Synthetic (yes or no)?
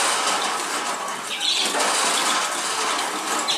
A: no